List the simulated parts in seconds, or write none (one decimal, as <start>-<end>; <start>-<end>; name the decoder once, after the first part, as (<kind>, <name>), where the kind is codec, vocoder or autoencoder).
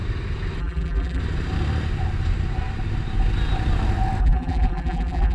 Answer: 0.6-1.2 (vocoder, BigVGAN v2); 4.2-5.3